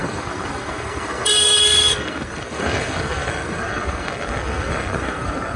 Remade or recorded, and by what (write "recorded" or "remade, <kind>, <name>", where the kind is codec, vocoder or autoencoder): remade, codec, SNAC